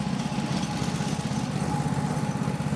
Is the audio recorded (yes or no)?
yes